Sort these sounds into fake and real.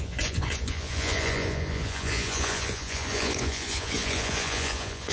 fake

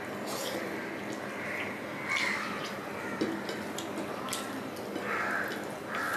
real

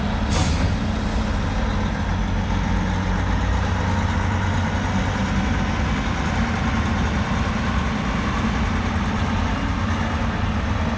real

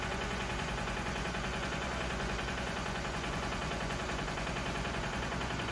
fake